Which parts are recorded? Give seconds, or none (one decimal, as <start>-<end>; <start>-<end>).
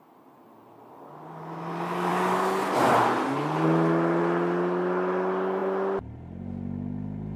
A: 0.0-7.4